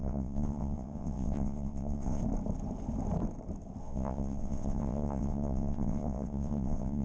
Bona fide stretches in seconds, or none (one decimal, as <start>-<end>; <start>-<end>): 2.2-3.8